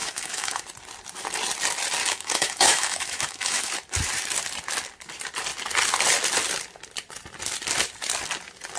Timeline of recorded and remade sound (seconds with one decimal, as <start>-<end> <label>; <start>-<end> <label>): 0.0-0.6 remade; 0.6-2.0 recorded; 2.0-3.7 remade; 3.7-8.8 recorded